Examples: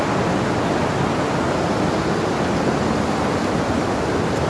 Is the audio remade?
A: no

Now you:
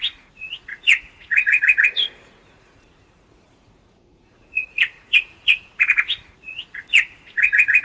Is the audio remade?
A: yes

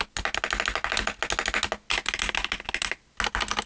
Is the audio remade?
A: no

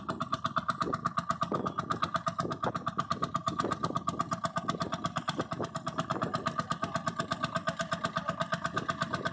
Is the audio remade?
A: no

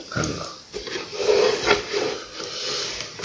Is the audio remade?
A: no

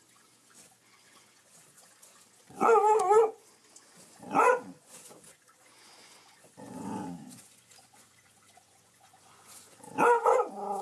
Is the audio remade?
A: yes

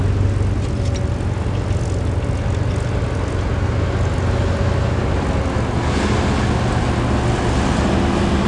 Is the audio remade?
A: no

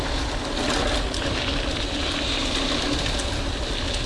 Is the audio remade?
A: no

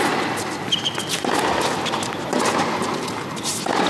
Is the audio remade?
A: no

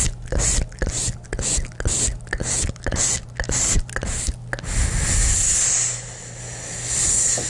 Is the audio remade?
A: no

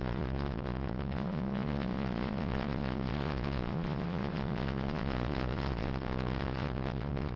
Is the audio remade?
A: yes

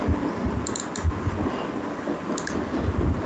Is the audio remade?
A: no